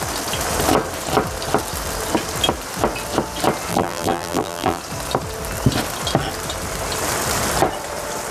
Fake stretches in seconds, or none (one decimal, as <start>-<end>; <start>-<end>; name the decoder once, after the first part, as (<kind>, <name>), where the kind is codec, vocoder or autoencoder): 3.7-4.8 (vocoder, BigVGAN v2)